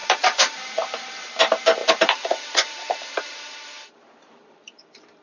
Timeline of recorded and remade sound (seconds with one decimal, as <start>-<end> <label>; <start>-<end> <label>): 0.0-1.3 remade; 1.3-1.8 recorded; 1.8-5.2 remade